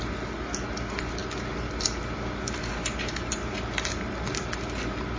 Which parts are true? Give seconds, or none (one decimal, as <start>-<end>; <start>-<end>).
0.0-5.2